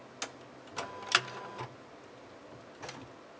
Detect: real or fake real